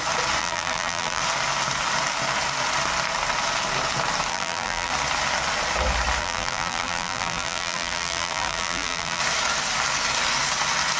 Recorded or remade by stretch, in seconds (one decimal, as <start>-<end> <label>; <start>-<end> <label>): 0.0-0.4 recorded; 0.4-1.2 remade; 1.2-4.3 recorded; 4.3-4.9 remade; 4.9-6.2 recorded; 6.2-9.2 remade; 9.2-11.0 recorded